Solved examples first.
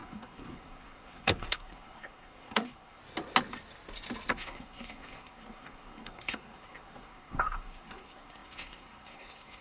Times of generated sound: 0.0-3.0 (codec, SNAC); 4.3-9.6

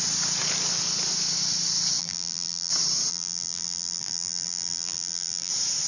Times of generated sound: 2.0-2.7 (vocoder, BigVGAN v2); 3.1-5.5

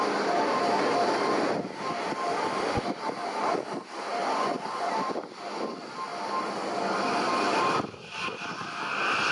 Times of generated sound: 4.2-4.9 (vocoder, Vocos)

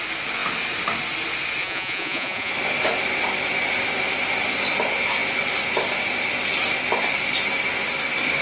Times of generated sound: 1.6-2.5 (vocoder, Vocos)